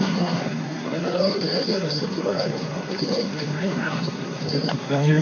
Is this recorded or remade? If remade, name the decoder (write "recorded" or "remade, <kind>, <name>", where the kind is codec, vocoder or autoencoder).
remade, codec, SNAC